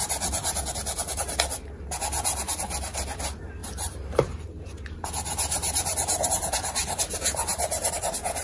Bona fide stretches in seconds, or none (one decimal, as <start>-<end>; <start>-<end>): 0.0-3.6; 7.9-8.4